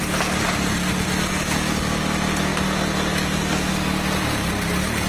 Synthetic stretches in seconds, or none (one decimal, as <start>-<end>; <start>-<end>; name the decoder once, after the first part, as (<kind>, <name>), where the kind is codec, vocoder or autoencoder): none